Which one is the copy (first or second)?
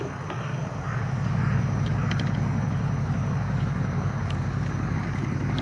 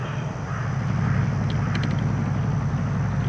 first